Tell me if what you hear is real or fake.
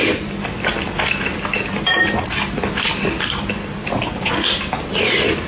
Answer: real